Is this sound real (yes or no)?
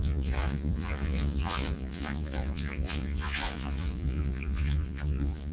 no